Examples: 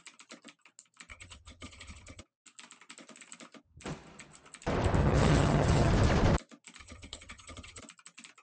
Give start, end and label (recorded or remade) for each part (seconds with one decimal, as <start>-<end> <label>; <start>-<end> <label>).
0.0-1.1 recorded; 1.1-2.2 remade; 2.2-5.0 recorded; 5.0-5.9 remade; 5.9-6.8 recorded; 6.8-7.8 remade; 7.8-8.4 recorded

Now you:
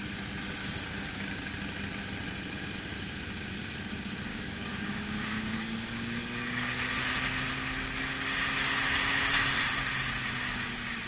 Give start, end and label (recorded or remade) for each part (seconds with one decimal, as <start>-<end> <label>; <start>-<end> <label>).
0.0-0.6 recorded; 0.6-1.4 remade; 1.4-4.3 recorded; 4.3-6.9 remade; 6.9-11.1 recorded

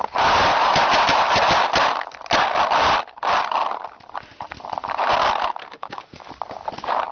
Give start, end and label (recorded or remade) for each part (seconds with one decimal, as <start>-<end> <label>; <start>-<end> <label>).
0.0-5.6 recorded; 5.6-6.3 remade; 6.3-7.1 recorded

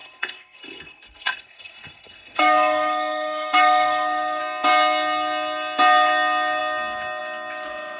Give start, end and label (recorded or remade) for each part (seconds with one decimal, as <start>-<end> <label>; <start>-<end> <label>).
0.0-4.4 remade; 4.4-8.0 recorded